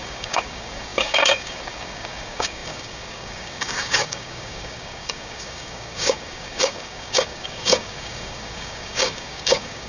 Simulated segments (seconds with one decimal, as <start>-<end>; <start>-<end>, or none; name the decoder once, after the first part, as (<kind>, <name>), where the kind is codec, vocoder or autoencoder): 0.0-9.9 (codec, DAC)